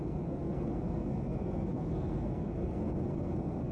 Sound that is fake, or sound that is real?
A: fake